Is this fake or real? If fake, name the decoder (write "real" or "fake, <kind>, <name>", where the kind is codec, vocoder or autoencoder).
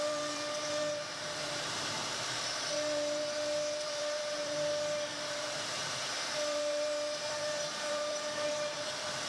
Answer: fake, vocoder, BigVGAN v2